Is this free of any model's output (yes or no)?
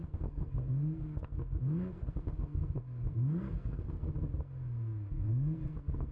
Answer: no